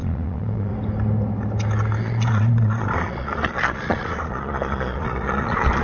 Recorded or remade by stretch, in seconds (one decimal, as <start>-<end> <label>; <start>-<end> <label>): 0.0-0.7 remade; 0.7-2.0 recorded; 2.0-5.8 remade